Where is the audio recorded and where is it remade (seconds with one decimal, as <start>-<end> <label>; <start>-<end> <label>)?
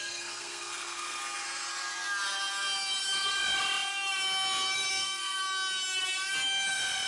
0.0-1.2 remade; 1.2-4.9 recorded; 4.9-5.4 remade; 5.4-7.1 recorded